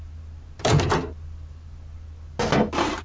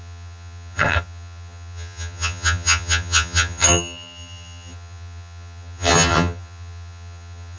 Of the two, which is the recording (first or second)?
first